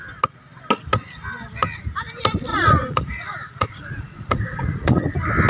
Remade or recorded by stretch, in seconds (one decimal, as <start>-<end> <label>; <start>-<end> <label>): 0.0-2.5 recorded; 2.5-5.0 remade; 5.0-5.5 recorded